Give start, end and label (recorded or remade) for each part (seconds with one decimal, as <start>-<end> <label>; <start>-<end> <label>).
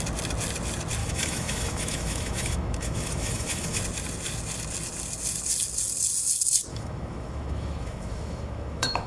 0.0-1.0 recorded; 1.0-3.8 remade; 3.8-6.7 recorded; 6.7-9.1 remade